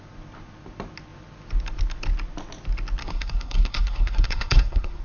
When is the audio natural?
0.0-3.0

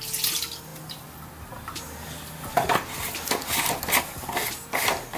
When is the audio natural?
0.0-5.2

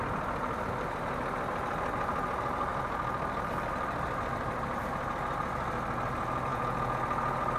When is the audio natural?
0.0-6.5; 7.0-7.6

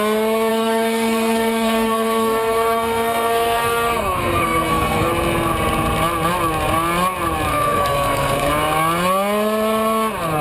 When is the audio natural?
0.0-0.5; 5.1-7.5; 8.5-10.4

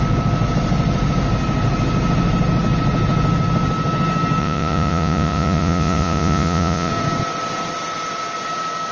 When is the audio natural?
0.0-4.4; 6.9-8.9